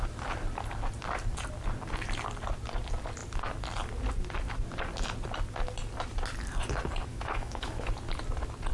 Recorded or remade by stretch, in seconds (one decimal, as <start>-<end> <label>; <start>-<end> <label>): 0.0-7.1 recorded; 7.1-7.9 remade; 7.9-8.7 recorded